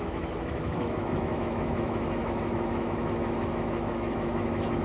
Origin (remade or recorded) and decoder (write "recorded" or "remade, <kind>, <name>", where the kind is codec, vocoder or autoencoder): remade, autoencoder, DAC-VAE